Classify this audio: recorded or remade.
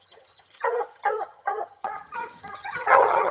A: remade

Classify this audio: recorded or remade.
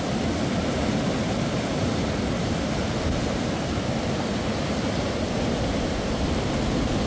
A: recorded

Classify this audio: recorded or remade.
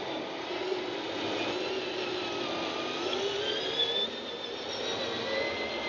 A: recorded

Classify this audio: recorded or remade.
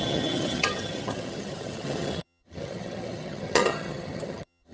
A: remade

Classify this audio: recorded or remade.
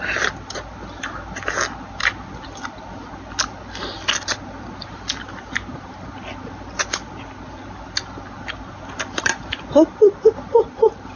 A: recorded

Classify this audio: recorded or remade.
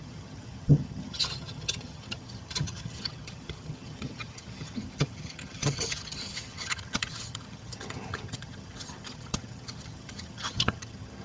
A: remade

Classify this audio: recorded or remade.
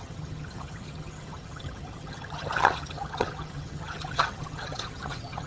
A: remade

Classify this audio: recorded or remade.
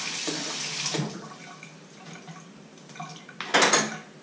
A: recorded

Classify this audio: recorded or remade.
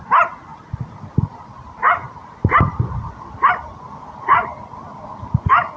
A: recorded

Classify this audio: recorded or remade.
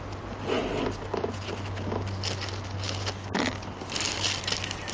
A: recorded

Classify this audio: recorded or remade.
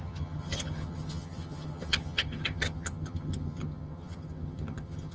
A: remade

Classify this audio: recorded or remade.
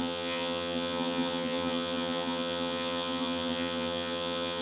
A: remade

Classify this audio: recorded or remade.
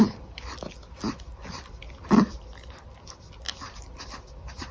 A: recorded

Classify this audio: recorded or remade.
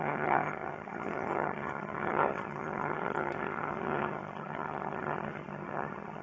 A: remade